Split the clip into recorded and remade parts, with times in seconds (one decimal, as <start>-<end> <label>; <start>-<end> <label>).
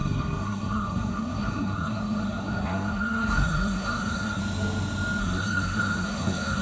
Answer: 0.0-4.4 remade; 4.4-5.2 recorded; 5.2-6.6 remade